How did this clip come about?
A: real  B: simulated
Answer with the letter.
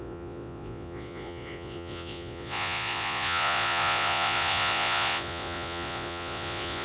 B